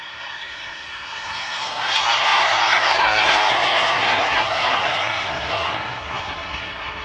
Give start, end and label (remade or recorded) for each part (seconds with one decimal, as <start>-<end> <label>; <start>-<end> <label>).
0.0-7.0 remade